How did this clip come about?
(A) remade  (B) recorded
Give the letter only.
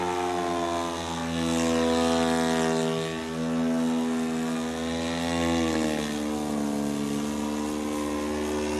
B